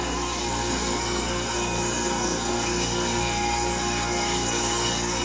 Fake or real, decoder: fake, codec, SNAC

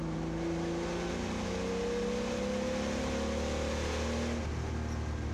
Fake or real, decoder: real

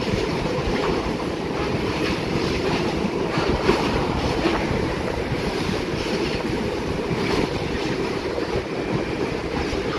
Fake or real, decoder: fake, vocoder, BigVGAN v2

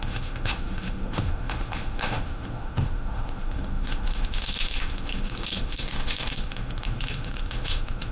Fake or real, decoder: fake, autoencoder, DAC-VAE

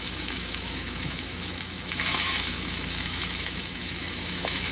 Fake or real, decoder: fake, autoencoder, DAC-VAE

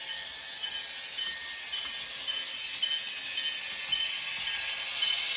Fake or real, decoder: real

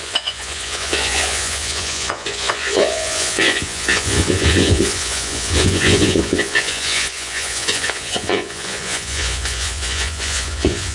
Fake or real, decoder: fake, vocoder, Vocos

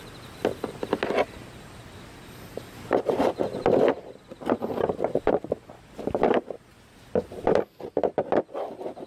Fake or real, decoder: real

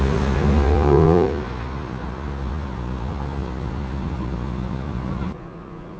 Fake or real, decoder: fake, vocoder, Vocos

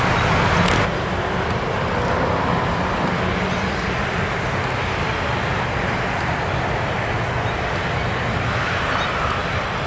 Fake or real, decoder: real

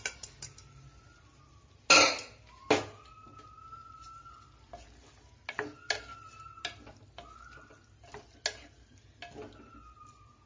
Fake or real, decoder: real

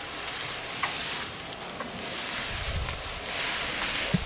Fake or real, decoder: real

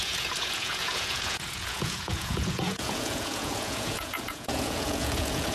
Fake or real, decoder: fake, vocoder, Vocos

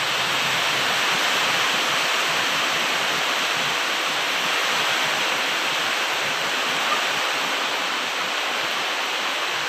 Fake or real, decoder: real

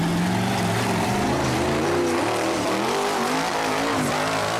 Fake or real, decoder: real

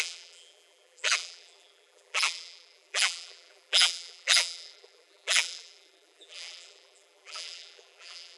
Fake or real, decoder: fake, vocoder, BigVGAN v2